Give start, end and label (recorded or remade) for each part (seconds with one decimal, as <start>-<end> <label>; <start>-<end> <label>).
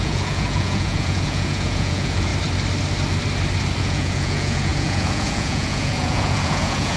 0.0-2.3 remade; 2.3-3.8 recorded; 3.8-7.0 remade